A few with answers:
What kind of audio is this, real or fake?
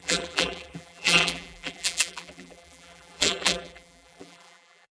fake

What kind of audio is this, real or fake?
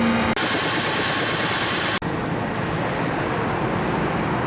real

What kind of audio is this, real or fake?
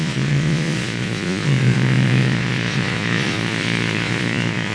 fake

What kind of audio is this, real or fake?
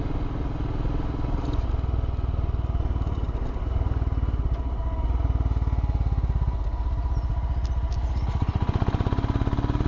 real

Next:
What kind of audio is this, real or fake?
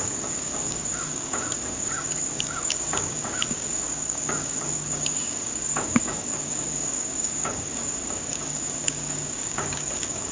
fake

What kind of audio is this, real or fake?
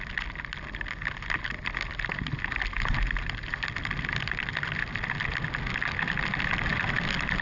real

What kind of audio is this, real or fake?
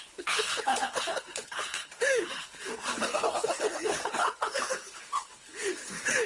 fake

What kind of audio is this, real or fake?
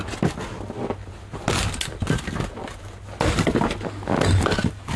real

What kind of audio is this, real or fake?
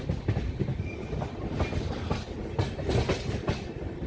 real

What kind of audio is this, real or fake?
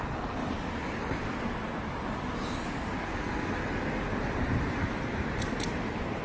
real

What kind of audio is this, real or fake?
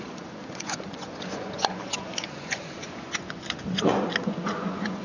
fake